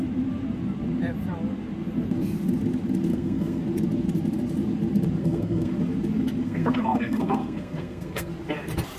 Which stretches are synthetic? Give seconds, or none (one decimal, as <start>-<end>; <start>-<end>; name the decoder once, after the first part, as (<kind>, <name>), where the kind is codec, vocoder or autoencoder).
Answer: 3.1-3.6 (codec, SNAC); 5.2-5.7; 6.4-8.3